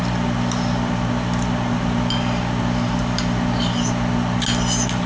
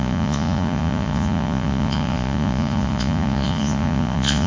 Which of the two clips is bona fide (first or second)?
first